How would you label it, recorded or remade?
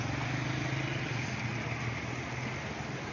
recorded